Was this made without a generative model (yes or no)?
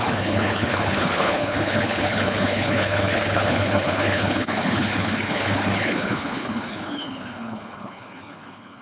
no